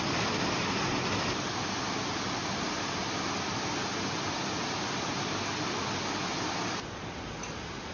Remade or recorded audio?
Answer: recorded